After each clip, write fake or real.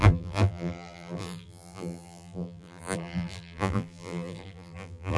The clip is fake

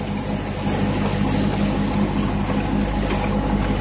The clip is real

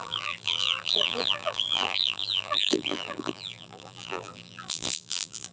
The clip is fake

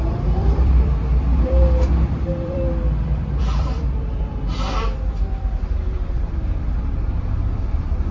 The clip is fake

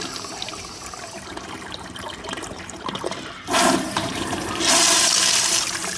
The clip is fake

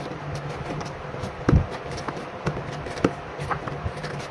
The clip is fake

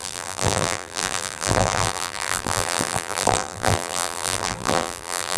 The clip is fake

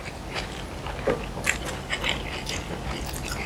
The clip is real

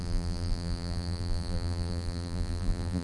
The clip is fake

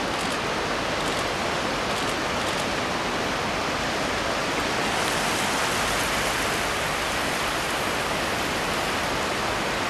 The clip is real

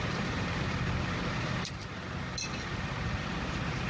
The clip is fake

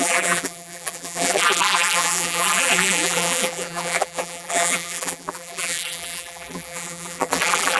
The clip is fake